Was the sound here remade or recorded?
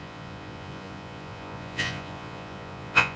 remade